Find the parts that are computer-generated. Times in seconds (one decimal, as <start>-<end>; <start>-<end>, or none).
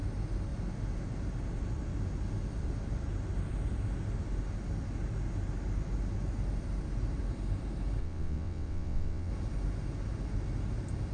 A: 8.0-9.3